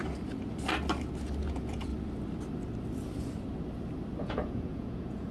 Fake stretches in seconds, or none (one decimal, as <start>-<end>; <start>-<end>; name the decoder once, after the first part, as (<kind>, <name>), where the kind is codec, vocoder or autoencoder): 1.4-1.9 (vocoder, Vocos); 4.2-5.3